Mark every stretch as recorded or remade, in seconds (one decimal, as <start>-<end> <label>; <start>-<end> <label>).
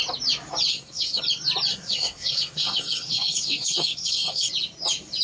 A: 0.0-0.7 recorded; 0.7-1.2 remade; 1.2-1.7 recorded; 1.7-4.5 remade; 4.5-5.2 recorded